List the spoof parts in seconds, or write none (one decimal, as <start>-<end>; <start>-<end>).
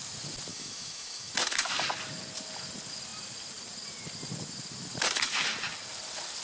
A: 0.5-1.3